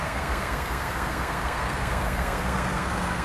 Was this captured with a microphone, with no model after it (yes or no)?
no